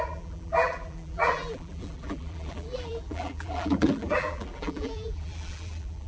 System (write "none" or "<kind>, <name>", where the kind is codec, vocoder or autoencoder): vocoder, BigVGAN v2